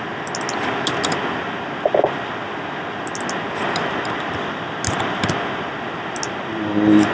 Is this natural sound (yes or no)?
yes